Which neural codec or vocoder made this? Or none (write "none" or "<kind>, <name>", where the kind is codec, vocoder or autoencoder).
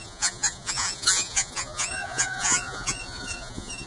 vocoder, Vocos